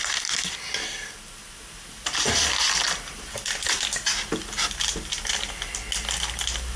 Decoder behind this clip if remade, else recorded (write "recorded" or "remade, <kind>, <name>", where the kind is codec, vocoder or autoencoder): recorded